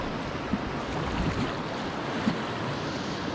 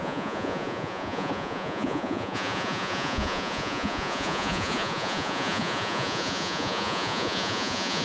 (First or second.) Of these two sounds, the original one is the first